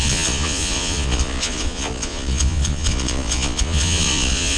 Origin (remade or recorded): remade